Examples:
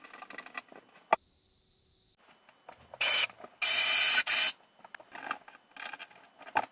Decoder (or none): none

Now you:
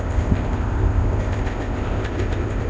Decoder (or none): codec, ZipCodec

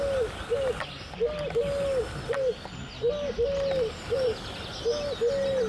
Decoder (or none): none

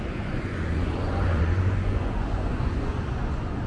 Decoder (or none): vocoder, Vocos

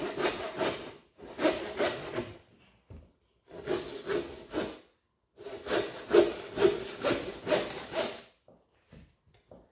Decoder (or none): none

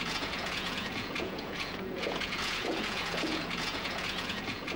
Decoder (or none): vocoder, Vocos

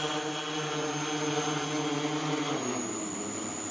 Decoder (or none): none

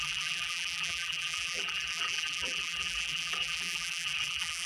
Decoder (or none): vocoder, BigVGAN v2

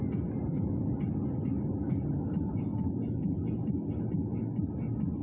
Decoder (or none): none